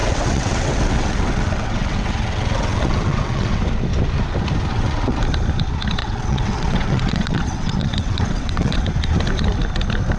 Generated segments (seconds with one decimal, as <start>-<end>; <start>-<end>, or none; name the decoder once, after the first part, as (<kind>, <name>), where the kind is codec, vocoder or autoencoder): 0.0-3.6 (vocoder, WaveNeXt); 4.7-5.2; 6.0-8.8